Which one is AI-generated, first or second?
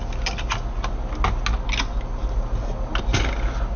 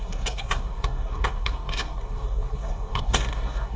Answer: second